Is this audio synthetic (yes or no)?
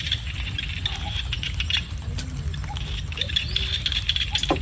no